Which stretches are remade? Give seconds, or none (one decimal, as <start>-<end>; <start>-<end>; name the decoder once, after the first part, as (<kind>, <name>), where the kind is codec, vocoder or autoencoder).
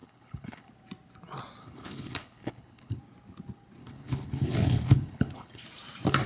0.0-0.7 (codec, HILCodec); 1.6-3.0; 3.8-5.6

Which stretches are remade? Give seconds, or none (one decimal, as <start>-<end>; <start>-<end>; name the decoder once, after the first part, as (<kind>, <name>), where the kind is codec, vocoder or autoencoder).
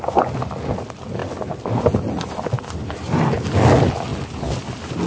none